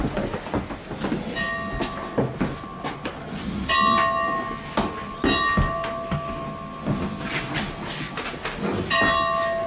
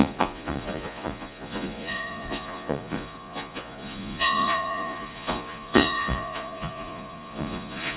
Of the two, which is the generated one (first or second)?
second